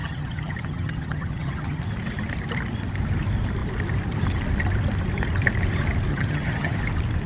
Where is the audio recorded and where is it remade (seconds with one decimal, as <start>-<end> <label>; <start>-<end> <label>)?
0.0-1.8 remade; 1.8-6.1 recorded; 6.1-6.8 remade; 6.8-7.3 recorded